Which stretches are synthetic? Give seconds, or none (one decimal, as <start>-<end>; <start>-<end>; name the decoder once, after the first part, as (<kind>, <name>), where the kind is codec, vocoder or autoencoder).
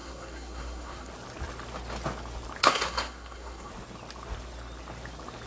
0.0-1.1 (codec, SNAC); 2.6-3.7